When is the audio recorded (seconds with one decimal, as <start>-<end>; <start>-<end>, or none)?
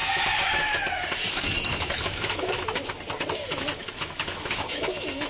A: 0.8-1.7; 2.9-3.4